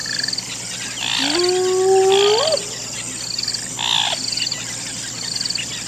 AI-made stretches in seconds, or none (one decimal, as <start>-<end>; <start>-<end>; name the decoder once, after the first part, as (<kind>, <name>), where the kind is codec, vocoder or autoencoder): none

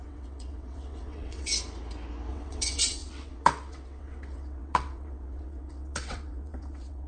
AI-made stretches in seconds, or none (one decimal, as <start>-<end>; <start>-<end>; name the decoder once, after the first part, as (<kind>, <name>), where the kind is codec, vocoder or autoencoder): 0.0-1.5 (vocoder, WaveNeXt); 2.3-7.1

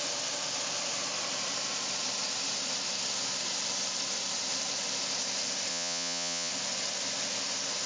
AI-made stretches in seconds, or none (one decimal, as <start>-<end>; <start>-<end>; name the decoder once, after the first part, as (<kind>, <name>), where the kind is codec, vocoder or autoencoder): 5.7-6.5 (vocoder, Vocos)

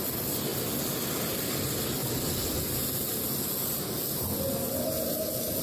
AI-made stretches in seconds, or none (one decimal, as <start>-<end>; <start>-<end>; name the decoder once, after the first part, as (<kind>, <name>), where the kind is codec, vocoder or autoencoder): none

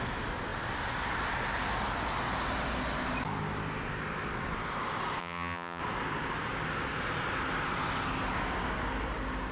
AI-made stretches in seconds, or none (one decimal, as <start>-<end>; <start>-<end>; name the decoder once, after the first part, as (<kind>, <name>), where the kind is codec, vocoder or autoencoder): 5.2-5.8 (vocoder, HiFi-GAN)